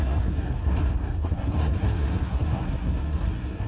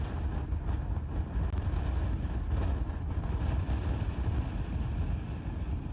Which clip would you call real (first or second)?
second